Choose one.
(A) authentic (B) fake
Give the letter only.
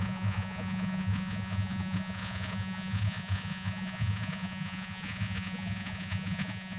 B